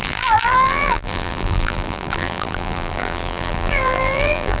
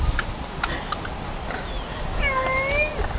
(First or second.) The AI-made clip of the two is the first